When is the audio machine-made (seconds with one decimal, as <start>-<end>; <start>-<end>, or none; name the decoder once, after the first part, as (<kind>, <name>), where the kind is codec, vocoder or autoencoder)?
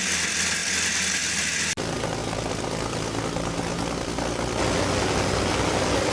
none